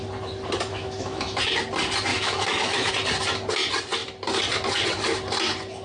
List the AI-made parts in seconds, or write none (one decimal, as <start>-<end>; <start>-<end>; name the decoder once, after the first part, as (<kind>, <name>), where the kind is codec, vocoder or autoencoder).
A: 0.7-1.4 (autoencoder, DAC-VAE); 2.1-2.9

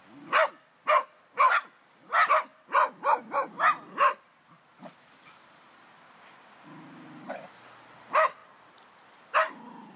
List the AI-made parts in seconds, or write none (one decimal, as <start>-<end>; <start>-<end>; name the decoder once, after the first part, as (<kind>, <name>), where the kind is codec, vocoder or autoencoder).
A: none